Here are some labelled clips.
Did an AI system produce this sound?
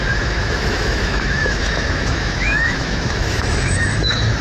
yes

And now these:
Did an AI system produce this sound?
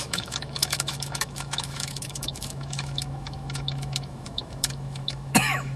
yes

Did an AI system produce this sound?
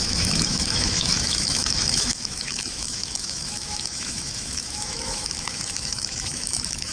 yes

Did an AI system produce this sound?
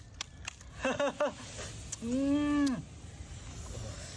no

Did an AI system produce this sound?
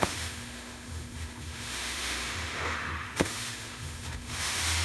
yes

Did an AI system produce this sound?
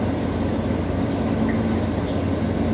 no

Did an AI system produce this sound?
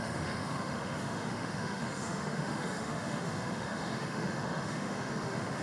yes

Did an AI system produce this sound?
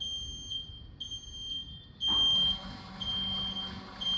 no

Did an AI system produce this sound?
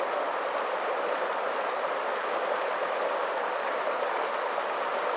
no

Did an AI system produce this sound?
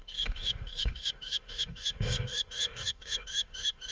yes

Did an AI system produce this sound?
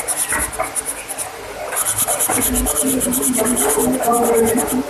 no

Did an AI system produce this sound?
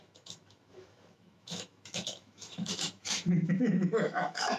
yes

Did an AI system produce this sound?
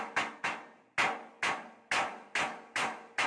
no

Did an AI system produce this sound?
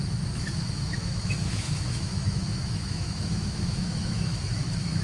yes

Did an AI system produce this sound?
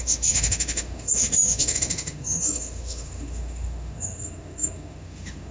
yes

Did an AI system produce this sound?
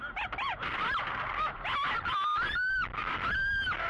no